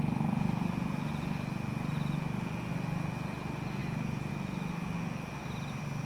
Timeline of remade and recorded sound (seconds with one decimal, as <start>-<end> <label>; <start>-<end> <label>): 0.0-3.8 recorded; 3.8-4.3 remade; 4.3-5.4 recorded; 5.4-6.1 remade